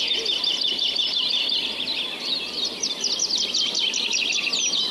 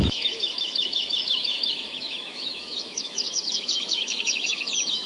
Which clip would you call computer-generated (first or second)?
second